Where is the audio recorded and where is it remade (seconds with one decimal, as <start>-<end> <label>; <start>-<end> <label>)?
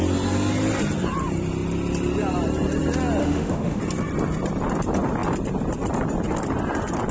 0.0-3.2 recorded; 3.2-3.8 remade; 3.8-7.1 recorded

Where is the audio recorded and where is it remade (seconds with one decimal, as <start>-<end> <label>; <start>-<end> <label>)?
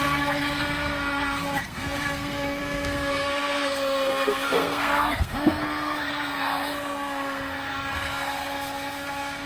0.0-9.5 remade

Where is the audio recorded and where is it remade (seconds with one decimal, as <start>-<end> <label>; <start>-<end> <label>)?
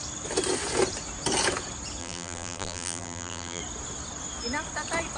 0.0-2.0 recorded; 2.0-3.6 remade; 3.6-5.2 recorded